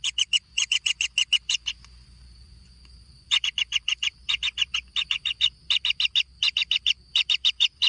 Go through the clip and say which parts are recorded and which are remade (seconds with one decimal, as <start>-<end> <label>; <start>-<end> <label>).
0.0-5.6 remade; 5.6-7.5 recorded; 7.5-7.9 remade